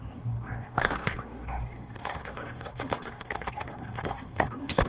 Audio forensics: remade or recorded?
remade